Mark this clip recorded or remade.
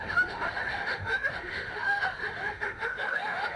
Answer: remade